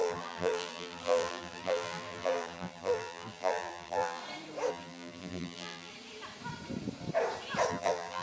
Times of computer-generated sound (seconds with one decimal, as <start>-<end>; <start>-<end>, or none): 0.0-4.2; 4.7-5.9; 7.7-8.2